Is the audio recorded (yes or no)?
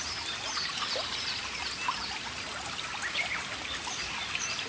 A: yes